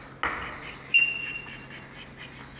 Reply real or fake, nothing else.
real